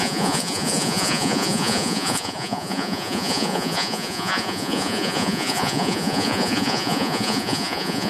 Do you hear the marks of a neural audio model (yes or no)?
yes